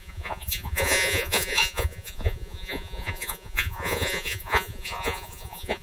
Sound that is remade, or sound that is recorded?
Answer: remade